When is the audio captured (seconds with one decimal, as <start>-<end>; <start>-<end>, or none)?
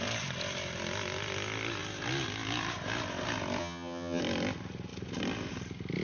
0.0-3.6; 4.2-6.0